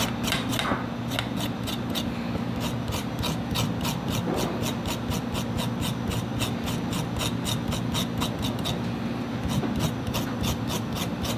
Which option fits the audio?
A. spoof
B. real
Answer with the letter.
B